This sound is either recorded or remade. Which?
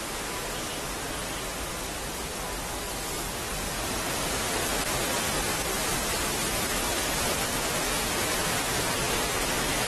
recorded